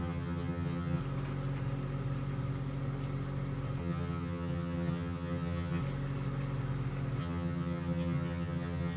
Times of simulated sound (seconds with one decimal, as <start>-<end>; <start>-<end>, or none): 0.0-1.0; 3.8-5.8; 7.2-9.0